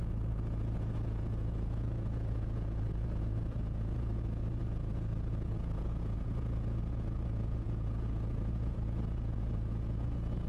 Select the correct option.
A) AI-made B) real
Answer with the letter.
A